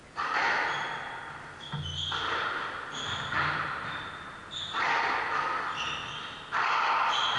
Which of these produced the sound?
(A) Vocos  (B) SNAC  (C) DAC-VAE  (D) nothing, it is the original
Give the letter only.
D